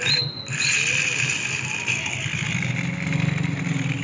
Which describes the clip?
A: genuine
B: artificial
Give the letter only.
A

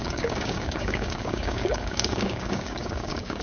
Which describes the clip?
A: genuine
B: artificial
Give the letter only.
B